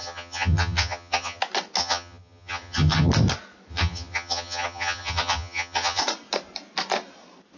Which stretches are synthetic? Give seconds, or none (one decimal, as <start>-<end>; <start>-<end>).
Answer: 0.0-1.4; 1.8-3.1; 3.7-6.0

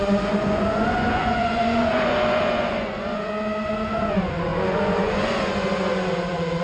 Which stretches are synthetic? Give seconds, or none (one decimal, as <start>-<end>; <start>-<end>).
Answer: 0.0-6.6

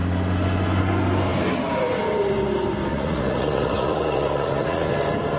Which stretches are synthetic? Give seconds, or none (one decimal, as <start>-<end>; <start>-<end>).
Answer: 2.9-4.9